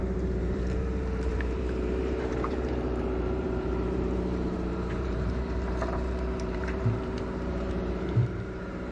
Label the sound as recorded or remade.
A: remade